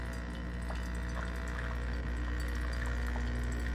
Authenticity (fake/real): real